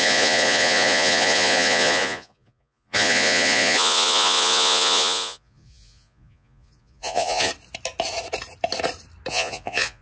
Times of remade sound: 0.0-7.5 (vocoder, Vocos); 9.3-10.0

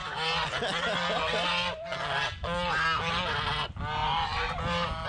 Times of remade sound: none